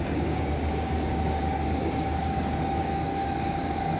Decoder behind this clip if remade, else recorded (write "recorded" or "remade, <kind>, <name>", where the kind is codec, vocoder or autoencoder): remade, codec, DAC